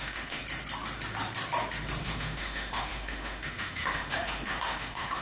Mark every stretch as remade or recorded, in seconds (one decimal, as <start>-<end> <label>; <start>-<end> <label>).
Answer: 0.0-0.4 remade; 0.4-2.0 recorded; 2.0-5.2 remade